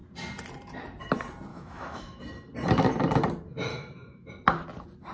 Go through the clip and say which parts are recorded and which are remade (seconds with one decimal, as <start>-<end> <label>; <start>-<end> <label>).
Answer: 0.0-1.5 recorded; 1.5-2.2 remade; 2.2-3.7 recorded; 3.7-4.3 remade; 4.3-5.1 recorded